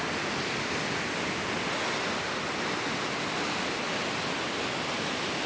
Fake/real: real